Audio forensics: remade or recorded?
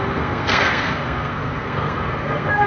remade